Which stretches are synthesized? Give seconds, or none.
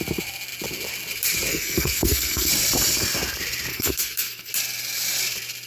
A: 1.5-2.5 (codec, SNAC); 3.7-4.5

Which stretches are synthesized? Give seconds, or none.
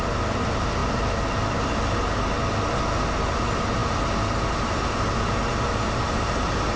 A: none